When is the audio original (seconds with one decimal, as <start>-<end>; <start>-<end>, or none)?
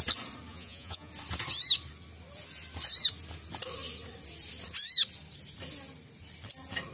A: 0.0-0.5; 1.1-6.9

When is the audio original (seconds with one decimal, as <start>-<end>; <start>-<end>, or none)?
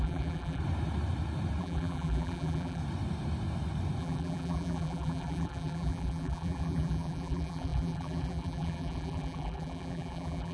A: 0.6-1.6; 2.8-4.0